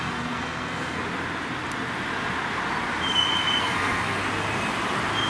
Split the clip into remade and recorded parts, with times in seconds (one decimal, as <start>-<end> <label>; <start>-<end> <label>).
0.0-1.0 remade; 1.0-3.6 recorded; 3.6-4.2 remade; 4.2-5.3 recorded